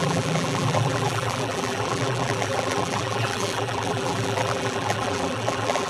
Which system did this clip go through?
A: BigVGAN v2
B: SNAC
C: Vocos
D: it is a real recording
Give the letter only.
A